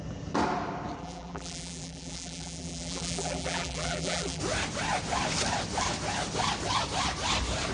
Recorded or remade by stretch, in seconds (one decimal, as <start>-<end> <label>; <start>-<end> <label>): 0.0-1.0 recorded; 1.0-4.4 remade; 4.4-7.7 recorded